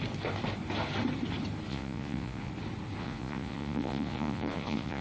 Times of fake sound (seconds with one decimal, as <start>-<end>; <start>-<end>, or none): 1.7-2.5; 3.0-5.0